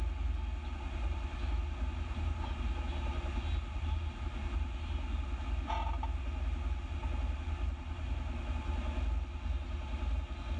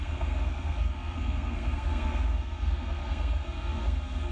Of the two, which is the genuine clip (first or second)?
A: first